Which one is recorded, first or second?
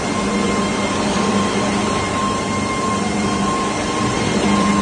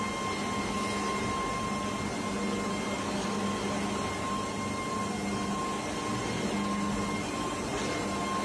second